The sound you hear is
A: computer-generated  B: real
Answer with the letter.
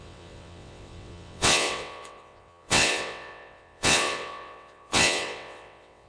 A